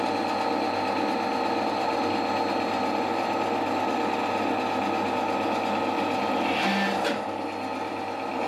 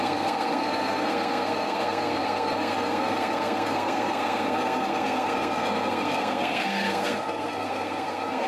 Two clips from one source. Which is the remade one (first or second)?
second